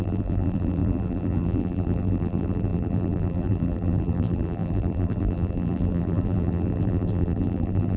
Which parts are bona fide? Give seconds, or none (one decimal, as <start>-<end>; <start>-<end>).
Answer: none